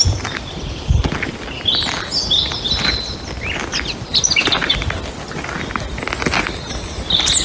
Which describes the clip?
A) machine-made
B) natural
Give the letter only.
B